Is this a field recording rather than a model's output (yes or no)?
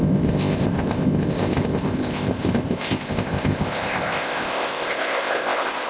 no